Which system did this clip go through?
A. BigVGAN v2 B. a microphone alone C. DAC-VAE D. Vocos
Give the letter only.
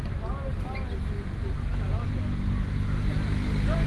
B